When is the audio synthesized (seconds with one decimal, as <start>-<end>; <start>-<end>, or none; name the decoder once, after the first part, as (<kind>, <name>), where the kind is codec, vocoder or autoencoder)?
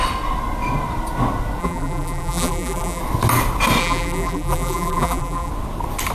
1.6-3.0 (vocoder, BigVGAN v2); 3.8-5.5